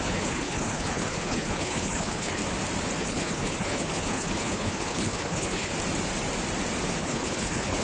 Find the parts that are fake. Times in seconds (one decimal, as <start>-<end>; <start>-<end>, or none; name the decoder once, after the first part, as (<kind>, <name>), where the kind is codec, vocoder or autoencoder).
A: 0.0-2.4 (codec, HILCodec); 3.0-5.7; 7.0-7.8

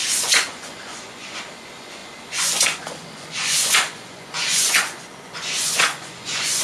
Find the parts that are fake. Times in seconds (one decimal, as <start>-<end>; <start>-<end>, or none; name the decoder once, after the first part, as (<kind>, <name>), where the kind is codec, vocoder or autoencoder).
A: 0.0-6.6 (vocoder, Vocos)

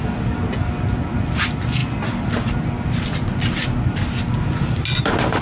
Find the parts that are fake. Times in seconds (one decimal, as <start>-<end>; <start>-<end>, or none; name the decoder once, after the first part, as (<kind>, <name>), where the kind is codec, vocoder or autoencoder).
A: none

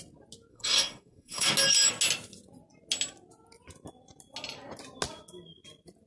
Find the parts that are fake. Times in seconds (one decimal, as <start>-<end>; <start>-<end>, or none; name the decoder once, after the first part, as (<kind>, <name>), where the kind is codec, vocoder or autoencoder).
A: 0.5-1.5 (codec, SNAC)

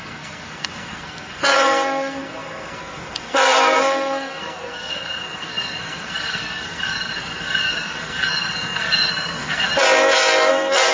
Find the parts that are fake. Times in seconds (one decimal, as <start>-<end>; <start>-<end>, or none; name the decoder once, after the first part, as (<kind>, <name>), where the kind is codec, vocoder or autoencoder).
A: 0.0-9.7 (codec, SNAC); 10.5-10.9

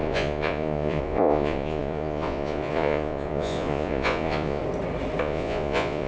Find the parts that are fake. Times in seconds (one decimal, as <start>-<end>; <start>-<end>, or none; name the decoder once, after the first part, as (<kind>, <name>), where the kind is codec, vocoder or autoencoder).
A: 0.0-4.6 (vocoder, Vocos); 5.2-6.1

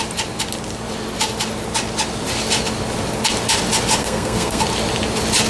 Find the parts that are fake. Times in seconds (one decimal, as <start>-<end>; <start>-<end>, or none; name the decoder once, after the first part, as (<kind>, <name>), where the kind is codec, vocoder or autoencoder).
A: 4.0-4.6 (codec, SNAC)

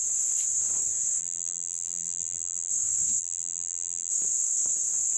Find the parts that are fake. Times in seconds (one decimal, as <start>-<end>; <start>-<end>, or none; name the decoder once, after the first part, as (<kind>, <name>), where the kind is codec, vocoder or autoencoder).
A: 1.2-2.7 (vocoder, BigVGAN v2); 3.2-4.1